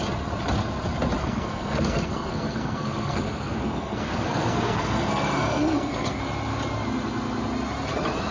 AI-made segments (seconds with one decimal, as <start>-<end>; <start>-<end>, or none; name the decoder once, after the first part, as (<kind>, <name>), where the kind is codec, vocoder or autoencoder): 1.2-6.2 (codec, SNAC)